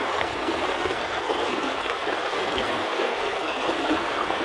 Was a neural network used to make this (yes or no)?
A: yes